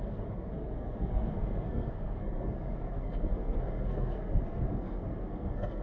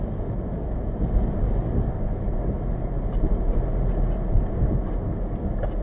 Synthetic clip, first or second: first